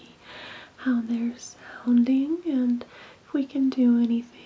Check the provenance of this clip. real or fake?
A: real